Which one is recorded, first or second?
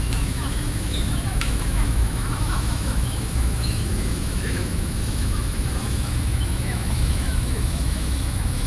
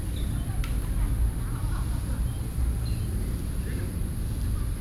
second